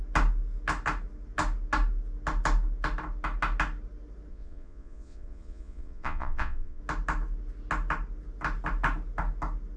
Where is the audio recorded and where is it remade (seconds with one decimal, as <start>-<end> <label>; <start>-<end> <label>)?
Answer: 0.0-4.3 recorded; 4.3-6.8 remade; 6.8-9.8 recorded